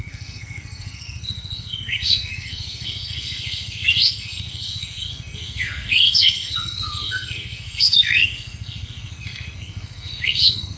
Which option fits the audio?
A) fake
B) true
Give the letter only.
A